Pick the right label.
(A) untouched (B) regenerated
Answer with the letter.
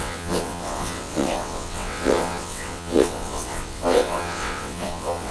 B